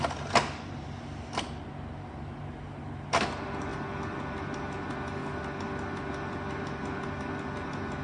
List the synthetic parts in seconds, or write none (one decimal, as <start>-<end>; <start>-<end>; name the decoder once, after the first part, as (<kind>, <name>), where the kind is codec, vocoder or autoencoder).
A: none